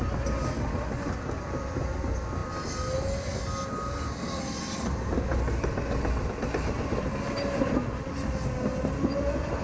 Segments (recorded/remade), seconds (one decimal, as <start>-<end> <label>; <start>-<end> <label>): 0.0-9.6 recorded